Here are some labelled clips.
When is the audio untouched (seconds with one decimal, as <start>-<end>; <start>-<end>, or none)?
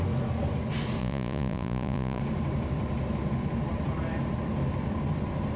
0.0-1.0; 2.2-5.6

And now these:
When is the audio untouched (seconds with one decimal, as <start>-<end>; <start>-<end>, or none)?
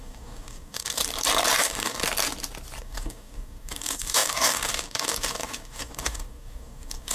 1.0-1.6; 2.0-2.8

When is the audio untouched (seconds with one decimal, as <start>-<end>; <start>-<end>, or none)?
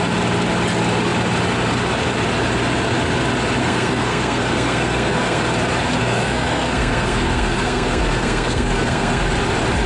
0.0-3.6; 5.4-6.0; 9.2-9.9